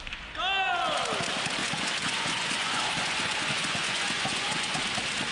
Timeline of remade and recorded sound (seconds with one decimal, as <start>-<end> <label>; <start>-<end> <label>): 0.0-1.6 recorded; 1.6-4.8 remade; 4.8-5.3 recorded

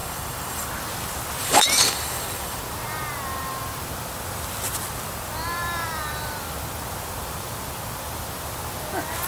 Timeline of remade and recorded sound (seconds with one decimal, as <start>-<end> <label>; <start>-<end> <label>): 0.0-0.7 remade; 0.7-1.4 recorded; 1.4-2.6 remade; 2.6-9.3 recorded

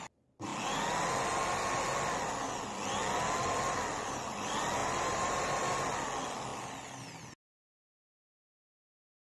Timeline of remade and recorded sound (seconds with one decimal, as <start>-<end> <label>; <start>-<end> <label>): 0.0-4.8 recorded; 4.8-5.4 remade; 5.4-9.3 recorded

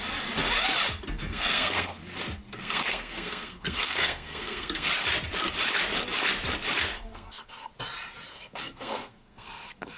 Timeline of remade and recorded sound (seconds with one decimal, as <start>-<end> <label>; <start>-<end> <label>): 0.0-1.2 recorded; 1.2-2.0 remade; 2.0-2.5 recorded; 2.5-4.9 remade; 4.9-6.9 recorded; 6.9-7.7 remade; 7.7-8.3 recorded; 8.3-10.0 remade

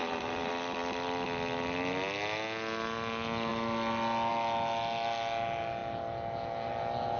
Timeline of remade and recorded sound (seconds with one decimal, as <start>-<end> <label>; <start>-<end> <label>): 0.0-0.5 remade; 0.5-7.2 recorded

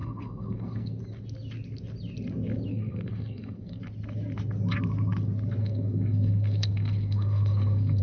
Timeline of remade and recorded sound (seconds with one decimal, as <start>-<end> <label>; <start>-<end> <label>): 0.0-1.0 remade; 1.0-2.7 recorded; 2.7-3.8 remade; 3.8-5.6 recorded; 5.6-8.0 remade